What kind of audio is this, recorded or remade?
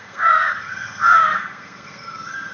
remade